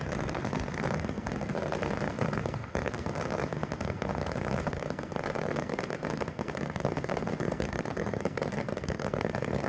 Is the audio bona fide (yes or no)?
no